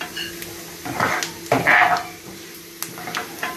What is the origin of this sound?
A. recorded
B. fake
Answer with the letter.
A